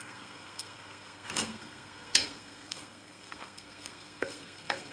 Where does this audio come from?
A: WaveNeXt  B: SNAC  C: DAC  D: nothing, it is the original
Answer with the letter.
B